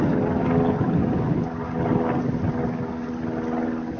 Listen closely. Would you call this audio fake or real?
real